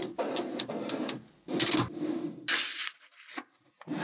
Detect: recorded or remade recorded